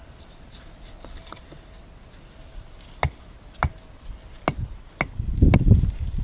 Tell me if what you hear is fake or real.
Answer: real